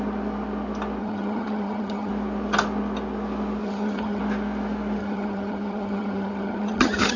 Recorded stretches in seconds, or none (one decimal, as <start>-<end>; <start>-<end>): 0.0-1.0; 2.1-3.6; 4.2-5.0